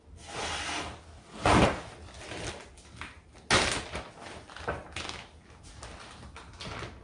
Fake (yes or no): no